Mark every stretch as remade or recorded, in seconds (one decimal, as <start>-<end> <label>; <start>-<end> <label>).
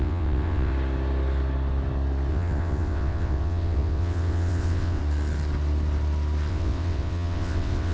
0.0-0.7 remade; 0.7-2.3 recorded; 2.3-5.0 remade; 5.0-6.5 recorded; 6.5-7.9 remade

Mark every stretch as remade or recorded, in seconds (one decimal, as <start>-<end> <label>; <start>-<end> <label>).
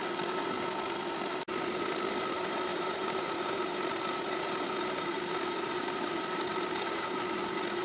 0.0-2.7 recorded; 2.7-7.2 remade; 7.2-7.8 recorded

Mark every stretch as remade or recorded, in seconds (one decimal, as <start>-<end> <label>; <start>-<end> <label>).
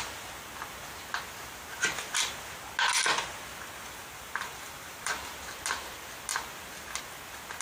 0.0-4.0 recorded; 4.0-5.5 remade; 5.5-7.6 recorded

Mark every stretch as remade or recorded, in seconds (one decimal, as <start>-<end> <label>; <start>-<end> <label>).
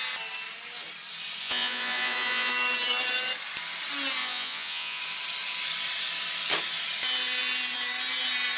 0.0-1.4 recorded; 1.4-2.5 remade; 2.5-4.2 recorded; 4.2-5.0 remade; 5.0-8.6 recorded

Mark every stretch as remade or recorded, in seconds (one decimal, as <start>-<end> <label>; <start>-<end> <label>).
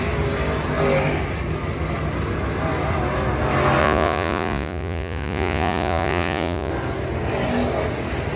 0.0-3.8 recorded; 3.8-6.7 remade; 6.7-8.4 recorded